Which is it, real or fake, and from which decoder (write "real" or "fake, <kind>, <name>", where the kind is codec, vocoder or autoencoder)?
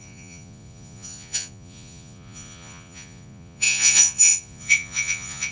fake, vocoder, Vocos